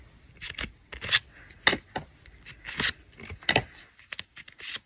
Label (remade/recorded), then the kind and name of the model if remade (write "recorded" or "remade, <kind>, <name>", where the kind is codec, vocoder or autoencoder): recorded